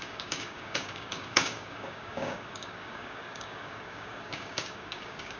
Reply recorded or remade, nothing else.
remade